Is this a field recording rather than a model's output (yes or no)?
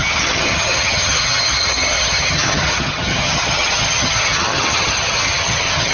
no